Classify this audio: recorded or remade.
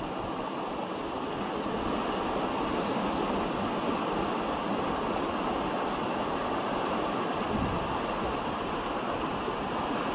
recorded